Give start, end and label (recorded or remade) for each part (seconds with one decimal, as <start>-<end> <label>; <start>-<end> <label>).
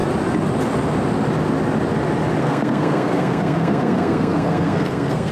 0.0-2.4 recorded; 2.4-5.3 remade